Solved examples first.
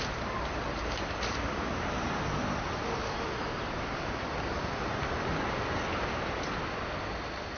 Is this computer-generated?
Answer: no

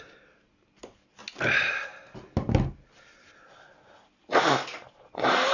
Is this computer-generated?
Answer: no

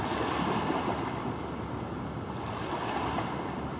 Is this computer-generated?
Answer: no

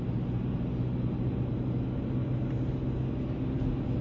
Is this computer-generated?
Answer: no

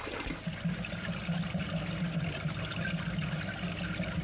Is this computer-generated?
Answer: no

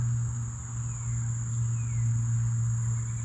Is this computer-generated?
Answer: no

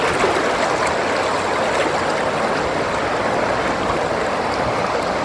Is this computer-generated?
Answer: no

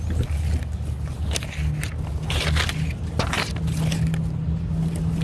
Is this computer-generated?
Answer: no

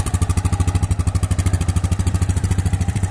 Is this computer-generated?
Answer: yes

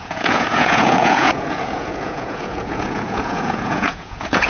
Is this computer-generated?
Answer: yes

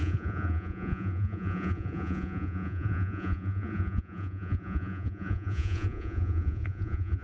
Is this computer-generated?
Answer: yes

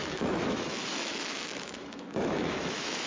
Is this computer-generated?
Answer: yes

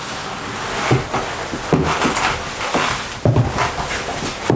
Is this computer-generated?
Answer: no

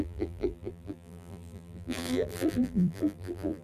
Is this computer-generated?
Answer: yes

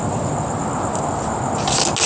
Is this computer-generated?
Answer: no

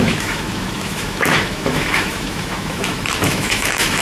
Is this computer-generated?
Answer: yes